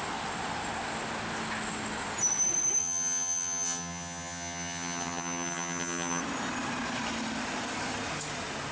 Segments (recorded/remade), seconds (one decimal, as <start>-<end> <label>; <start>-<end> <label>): 0.0-2.8 recorded; 2.8-6.2 remade; 6.2-8.7 recorded